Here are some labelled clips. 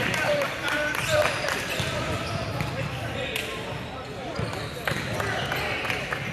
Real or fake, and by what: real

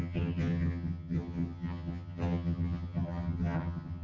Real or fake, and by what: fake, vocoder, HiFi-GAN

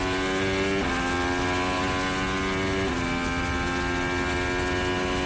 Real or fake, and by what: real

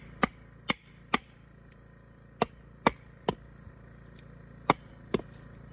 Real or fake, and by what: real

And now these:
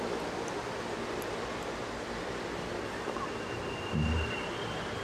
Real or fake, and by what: real